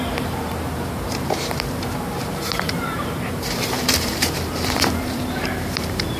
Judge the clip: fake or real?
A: fake